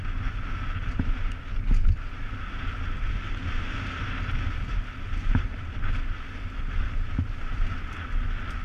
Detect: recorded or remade recorded